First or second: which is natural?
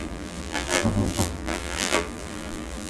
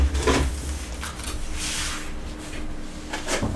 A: second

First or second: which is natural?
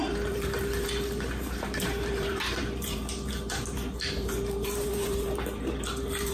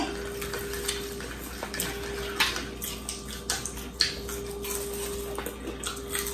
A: second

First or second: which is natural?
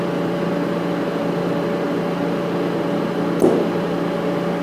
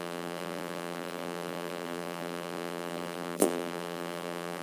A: first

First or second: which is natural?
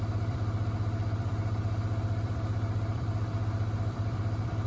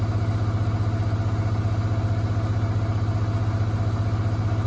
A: second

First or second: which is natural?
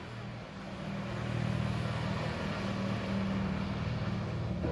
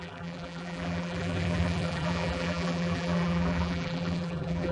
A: first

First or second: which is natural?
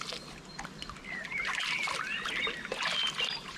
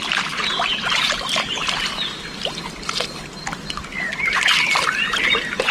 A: first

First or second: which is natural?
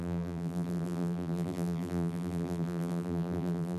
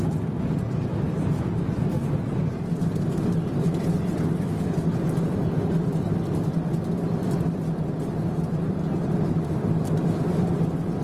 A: second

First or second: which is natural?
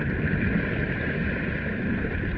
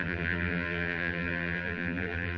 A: first